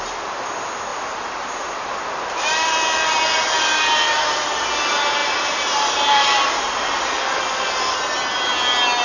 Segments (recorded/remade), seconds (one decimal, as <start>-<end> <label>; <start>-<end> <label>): 0.0-0.9 recorded; 0.9-4.5 remade; 4.5-5.2 recorded; 5.2-7.4 remade; 7.4-9.0 recorded